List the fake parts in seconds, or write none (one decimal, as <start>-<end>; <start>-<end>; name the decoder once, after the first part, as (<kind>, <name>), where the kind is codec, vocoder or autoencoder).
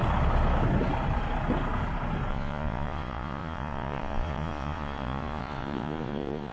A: 2.3-6.5 (vocoder, Vocos)